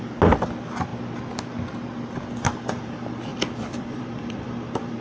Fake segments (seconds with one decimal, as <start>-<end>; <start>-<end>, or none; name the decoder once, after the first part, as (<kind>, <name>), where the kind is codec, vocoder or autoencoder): 3.3-4.5 (vocoder, BigVGAN v2)